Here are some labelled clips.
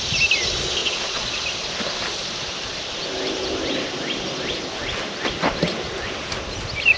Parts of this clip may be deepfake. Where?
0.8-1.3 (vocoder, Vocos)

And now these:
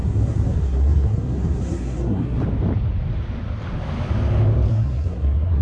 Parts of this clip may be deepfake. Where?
0.0-2.4 (codec, SNAC); 4.7-5.6

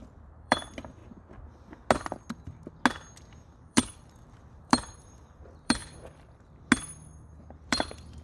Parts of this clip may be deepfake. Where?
0.0-1.0 (vocoder, BigVGAN v2); 3.3-5.8; 7.7-8.2

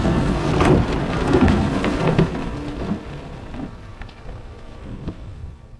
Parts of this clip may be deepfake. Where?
0.0-0.5 (codec, SNAC); 1.0-5.8

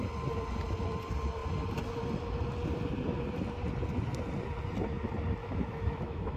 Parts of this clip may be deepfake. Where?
5.4-6.4 (autoencoder, DAC-VAE)

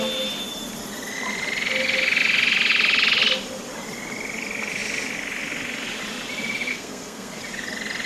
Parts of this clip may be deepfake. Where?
6.7-7.4 (codec, SNAC)